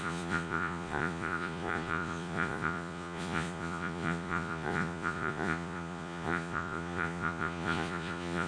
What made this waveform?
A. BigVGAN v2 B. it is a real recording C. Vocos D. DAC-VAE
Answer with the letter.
C